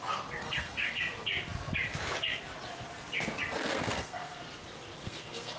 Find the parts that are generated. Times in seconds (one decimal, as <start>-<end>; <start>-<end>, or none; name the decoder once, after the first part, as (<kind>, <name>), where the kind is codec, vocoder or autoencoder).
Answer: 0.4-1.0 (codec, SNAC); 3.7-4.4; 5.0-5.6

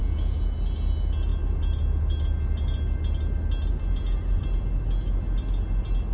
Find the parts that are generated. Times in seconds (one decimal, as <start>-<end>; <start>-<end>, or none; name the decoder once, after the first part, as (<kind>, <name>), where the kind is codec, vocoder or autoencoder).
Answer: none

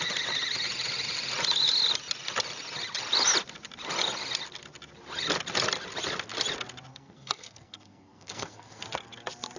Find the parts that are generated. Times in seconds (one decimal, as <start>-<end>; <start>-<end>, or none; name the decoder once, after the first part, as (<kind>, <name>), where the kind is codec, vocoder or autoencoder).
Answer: 6.9-8.8 (codec, SNAC)